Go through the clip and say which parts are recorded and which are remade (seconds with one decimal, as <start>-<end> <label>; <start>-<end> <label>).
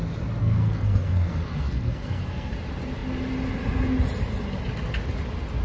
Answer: 0.0-0.4 recorded; 0.4-2.5 remade; 2.5-5.6 recorded